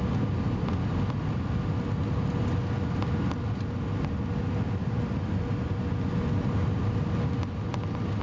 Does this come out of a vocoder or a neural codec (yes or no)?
no